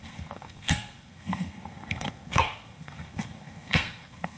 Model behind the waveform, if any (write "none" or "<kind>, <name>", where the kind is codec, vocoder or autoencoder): codec, SNAC